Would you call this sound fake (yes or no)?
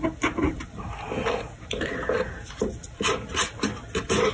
no